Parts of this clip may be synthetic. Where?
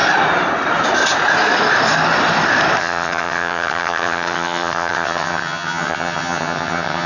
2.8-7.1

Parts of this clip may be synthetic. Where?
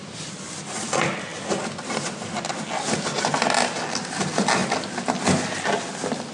none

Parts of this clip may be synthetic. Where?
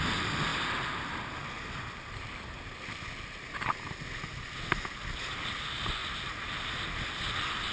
none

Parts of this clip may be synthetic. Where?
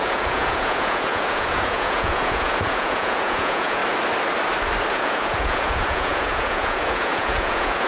0.0-3.8; 4.9-7.9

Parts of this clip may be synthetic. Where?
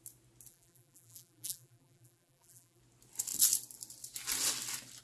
0.5-2.8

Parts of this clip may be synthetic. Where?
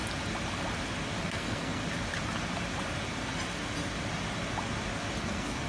1.2-1.8; 5.2-5.7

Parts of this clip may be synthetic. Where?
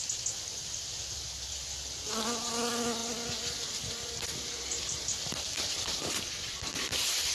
3.0-7.3